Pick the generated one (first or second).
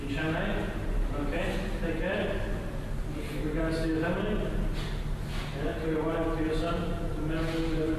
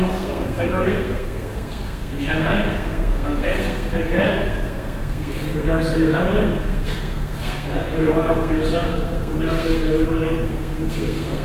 second